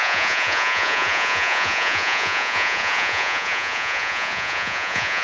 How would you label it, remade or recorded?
remade